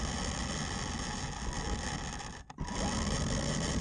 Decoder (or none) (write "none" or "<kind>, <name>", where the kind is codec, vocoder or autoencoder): none